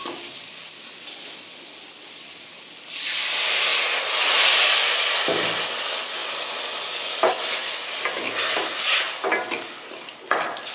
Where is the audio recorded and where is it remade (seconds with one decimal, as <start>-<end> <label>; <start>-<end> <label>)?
0.0-10.7 recorded